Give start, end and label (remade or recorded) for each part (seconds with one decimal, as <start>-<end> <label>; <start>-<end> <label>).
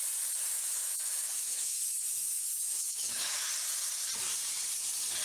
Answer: 0.0-0.4 recorded; 0.4-3.5 remade; 3.5-5.2 recorded